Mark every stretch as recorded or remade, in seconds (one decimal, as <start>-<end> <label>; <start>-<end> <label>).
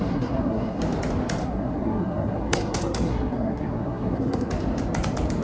0.0-0.8 remade; 0.8-1.4 recorded; 1.4-4.5 remade; 4.5-5.4 recorded